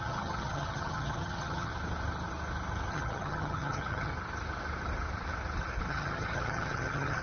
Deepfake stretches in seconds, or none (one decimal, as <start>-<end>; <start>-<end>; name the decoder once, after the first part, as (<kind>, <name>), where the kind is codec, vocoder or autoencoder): 0.0-1.7 (vocoder, HiFi-GAN); 2.9-4.1; 5.9-7.2

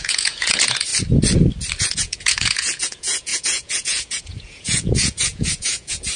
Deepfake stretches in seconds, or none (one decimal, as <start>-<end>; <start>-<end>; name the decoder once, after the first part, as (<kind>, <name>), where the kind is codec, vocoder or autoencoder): 0.0-0.9 (vocoder, Vocos); 1.8-6.2

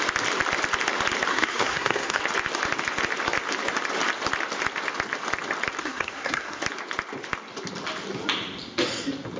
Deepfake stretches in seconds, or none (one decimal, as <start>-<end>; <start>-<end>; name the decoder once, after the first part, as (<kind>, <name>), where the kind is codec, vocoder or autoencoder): 1.3-2.2 (codec, SNAC); 5.8-6.6